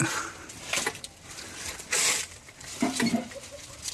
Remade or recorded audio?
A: recorded